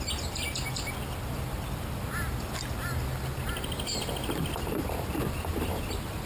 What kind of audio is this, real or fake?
real